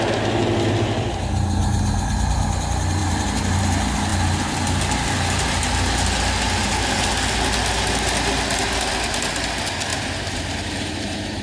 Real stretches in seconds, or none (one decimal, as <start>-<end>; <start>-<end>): 0.0-3.0; 3.6-9.9